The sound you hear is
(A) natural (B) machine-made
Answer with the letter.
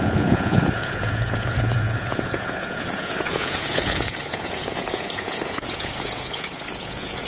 B